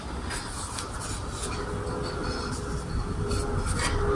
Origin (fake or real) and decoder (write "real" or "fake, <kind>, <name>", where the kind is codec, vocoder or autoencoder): real